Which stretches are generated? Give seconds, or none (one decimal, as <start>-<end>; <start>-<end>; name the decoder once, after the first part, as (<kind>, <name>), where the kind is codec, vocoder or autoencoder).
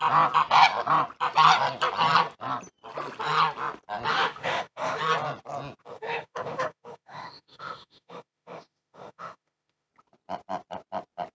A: 4.1-5.0 (autoencoder, DAC-VAE); 5.8-9.9